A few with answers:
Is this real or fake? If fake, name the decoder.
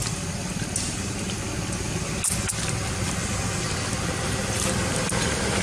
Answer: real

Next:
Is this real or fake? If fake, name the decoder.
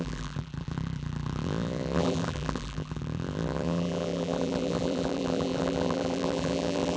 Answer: fake, vocoder, BigVGAN v2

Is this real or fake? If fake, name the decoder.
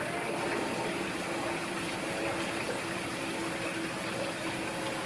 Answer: real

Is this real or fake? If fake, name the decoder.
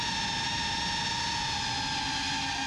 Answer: real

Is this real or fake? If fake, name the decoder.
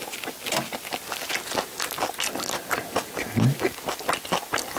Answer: real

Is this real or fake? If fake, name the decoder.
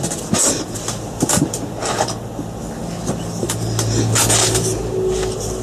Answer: real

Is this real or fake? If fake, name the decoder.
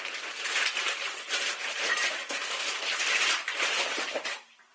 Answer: fake, vocoder, BigVGAN v2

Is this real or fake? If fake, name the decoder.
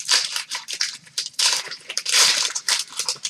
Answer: fake, vocoder, BigVGAN v2